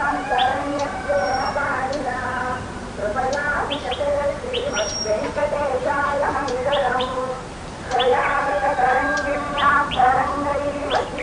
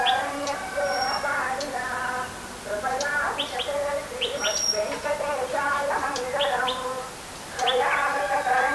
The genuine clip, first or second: second